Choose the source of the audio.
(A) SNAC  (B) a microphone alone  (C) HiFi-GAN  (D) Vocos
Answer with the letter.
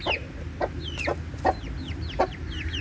B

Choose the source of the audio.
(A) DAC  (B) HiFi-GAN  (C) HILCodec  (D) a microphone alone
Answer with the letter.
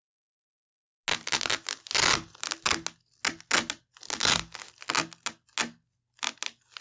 D